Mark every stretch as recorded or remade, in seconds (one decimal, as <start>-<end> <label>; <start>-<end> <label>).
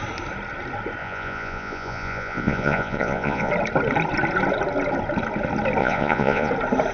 0.0-1.0 recorded; 1.0-3.5 remade; 3.5-5.8 recorded; 5.8-6.5 remade; 6.5-6.9 recorded